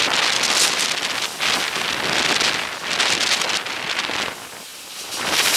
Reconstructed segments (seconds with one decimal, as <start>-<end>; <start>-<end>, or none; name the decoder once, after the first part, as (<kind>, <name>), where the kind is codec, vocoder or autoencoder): none